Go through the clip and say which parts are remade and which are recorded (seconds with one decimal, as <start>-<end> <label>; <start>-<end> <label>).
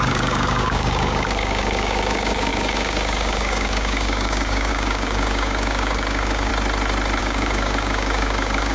0.0-6.5 remade; 6.5-7.2 recorded; 7.2-8.7 remade